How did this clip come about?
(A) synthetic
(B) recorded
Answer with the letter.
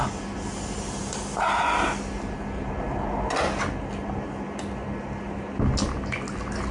B